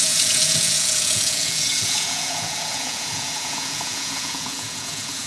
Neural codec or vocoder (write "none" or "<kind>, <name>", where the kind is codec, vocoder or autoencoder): vocoder, Vocos